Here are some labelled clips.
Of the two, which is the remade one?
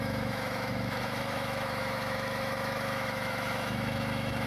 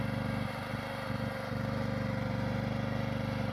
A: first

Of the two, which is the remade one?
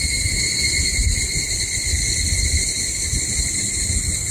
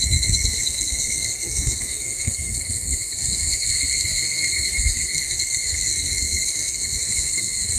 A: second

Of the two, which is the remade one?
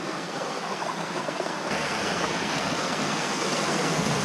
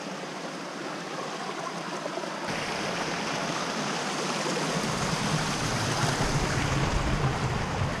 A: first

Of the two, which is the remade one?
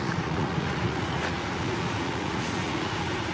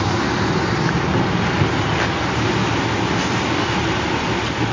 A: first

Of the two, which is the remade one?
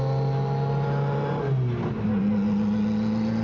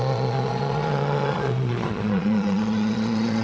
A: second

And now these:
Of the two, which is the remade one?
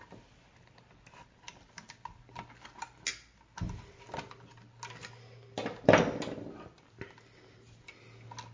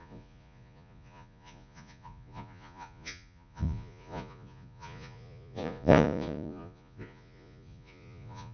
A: second